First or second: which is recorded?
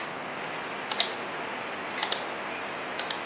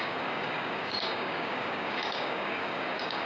first